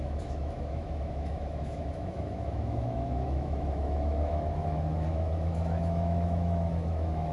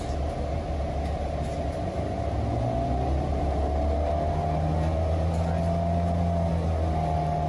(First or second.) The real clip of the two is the second